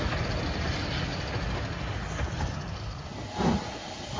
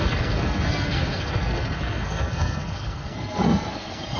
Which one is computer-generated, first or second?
second